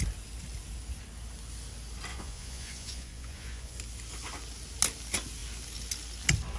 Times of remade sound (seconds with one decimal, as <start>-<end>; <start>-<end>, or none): 2.1-3.8